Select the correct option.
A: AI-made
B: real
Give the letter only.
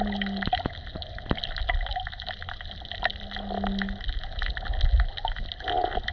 B